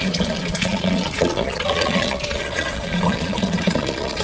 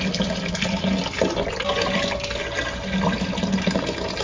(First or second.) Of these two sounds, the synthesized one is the first